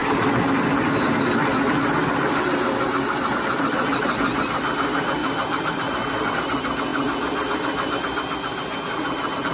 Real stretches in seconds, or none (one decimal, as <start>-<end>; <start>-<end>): 0.0-9.5